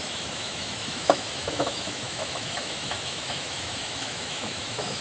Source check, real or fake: fake